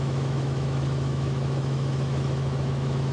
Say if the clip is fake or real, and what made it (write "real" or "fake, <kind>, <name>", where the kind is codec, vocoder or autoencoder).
fake, autoencoder, DAC-VAE